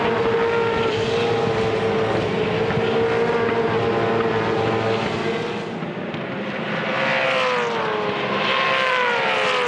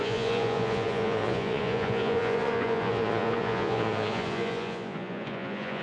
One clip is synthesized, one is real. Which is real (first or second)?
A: first